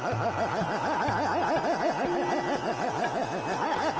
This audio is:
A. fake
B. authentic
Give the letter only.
B